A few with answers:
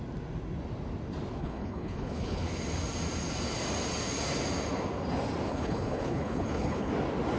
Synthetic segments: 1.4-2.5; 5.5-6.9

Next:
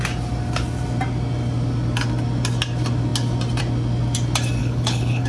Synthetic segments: 4.6-5.3